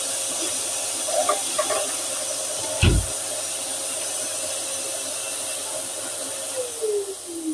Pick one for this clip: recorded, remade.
recorded